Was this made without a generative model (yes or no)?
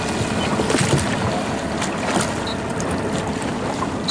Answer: yes